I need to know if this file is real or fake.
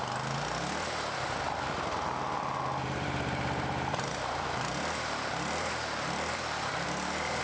fake